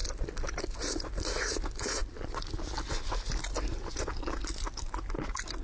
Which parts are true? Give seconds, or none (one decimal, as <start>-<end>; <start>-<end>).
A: 0.0-5.6